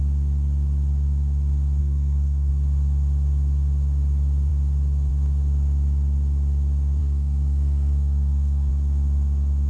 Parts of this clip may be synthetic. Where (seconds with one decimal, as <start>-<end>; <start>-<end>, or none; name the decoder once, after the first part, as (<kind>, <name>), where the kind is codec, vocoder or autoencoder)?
1.8-2.5 (codec, SNAC); 7.0-8.7